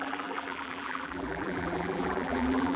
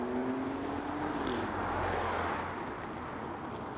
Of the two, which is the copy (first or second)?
first